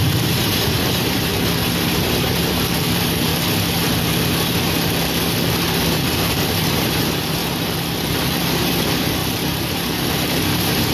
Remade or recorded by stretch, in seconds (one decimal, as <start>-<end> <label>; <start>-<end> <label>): 0.0-1.3 remade; 1.3-1.9 recorded; 1.9-3.3 remade; 3.3-5.9 recorded; 5.9-7.4 remade; 7.4-8.4 recorded; 8.4-9.2 remade; 9.2-9.7 recorded; 9.7-10.9 remade